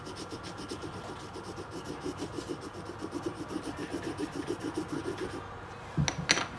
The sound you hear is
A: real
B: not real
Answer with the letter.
A